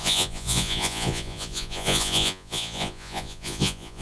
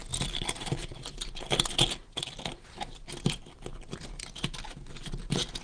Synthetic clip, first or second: first